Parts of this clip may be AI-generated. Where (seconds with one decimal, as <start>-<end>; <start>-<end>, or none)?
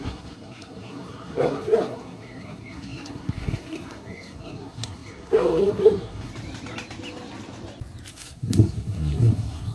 0.0-6.3; 8.1-9.7